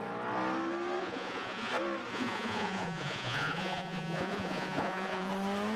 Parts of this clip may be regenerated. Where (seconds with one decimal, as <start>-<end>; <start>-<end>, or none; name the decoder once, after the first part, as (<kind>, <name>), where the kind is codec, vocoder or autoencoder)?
1.0-1.7 (vocoder, Vocos); 2.1-5.3